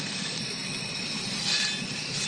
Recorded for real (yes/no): yes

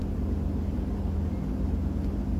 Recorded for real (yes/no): yes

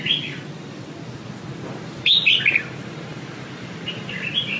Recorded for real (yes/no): no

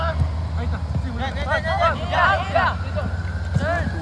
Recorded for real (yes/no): yes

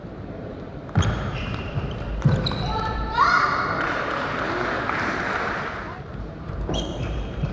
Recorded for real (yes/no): no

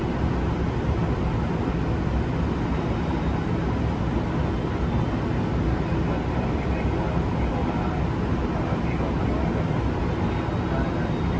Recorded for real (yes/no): yes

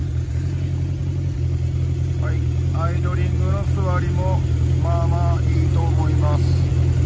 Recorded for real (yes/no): yes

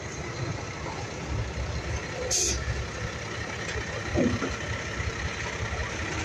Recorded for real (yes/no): yes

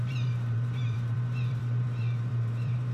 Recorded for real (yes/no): no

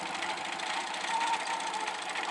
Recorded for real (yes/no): no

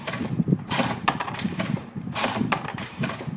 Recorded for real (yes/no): no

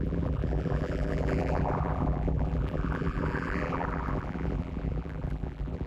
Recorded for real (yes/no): no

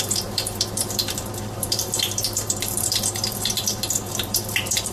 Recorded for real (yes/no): no